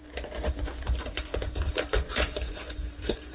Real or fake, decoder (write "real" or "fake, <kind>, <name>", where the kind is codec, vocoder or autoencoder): fake, vocoder, Vocos